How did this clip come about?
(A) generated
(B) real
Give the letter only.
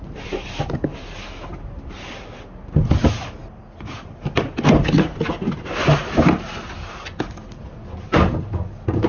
B